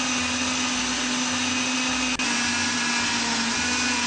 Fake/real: real